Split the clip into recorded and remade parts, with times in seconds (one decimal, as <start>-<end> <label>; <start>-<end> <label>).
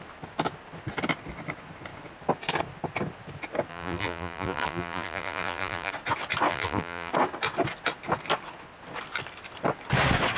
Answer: 0.0-3.7 recorded; 3.7-5.9 remade; 5.9-6.5 recorded; 6.5-7.1 remade; 7.1-10.4 recorded